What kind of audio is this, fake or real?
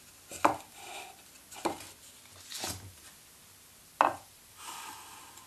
real